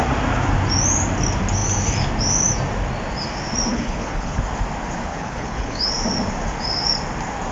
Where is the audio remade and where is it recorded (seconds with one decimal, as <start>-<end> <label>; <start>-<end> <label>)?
0.0-3.7 recorded; 3.7-4.4 remade; 4.4-5.1 recorded; 5.1-5.9 remade; 5.9-7.5 recorded